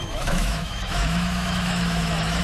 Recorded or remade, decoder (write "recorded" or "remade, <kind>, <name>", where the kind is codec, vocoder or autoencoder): remade, autoencoder, DAC-VAE